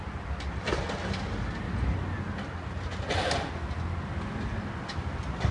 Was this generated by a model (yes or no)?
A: no